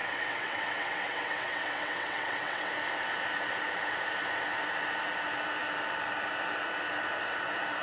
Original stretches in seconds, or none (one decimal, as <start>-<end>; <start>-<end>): 2.7-7.8